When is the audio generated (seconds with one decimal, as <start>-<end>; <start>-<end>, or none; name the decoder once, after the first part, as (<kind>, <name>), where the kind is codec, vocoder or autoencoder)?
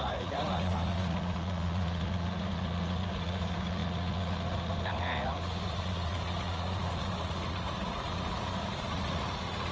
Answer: 0.0-9.7 (vocoder, Vocos)